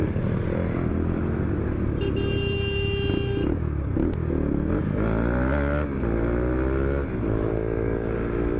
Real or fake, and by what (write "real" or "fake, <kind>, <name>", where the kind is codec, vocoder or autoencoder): real